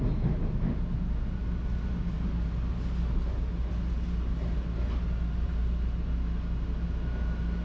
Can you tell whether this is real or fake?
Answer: real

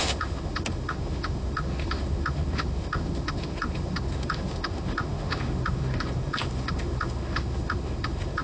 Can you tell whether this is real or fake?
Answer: fake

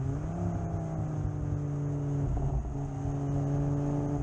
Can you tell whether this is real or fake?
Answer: real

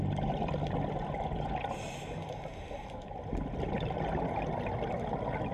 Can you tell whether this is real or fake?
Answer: real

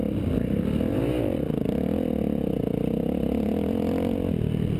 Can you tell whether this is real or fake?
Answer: real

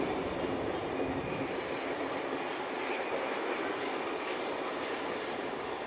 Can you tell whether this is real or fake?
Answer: real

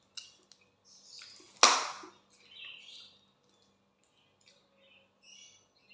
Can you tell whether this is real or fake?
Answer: real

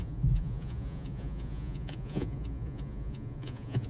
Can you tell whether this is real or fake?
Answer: fake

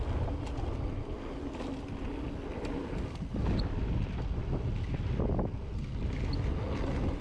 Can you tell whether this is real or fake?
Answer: real